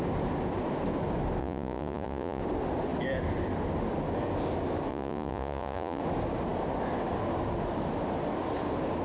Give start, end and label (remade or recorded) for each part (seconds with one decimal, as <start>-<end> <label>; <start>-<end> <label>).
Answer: 0.0-1.4 recorded; 1.4-2.4 remade; 2.4-4.9 recorded; 4.9-6.0 remade; 6.0-9.0 recorded